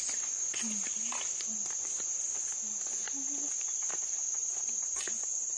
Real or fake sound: real